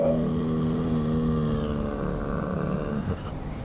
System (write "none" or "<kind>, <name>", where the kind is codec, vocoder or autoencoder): none